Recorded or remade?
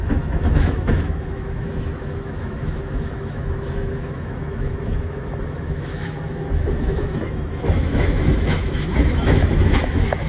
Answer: remade